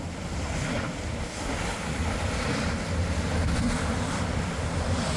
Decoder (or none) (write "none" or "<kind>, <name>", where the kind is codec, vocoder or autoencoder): none